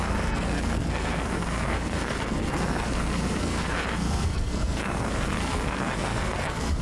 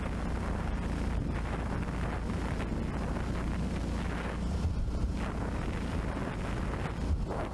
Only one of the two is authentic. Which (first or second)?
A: second